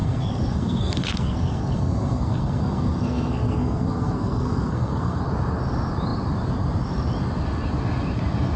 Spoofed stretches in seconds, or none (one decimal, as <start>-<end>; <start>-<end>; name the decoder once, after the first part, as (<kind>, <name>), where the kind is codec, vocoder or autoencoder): 0.0-5.2 (codec, SNAC)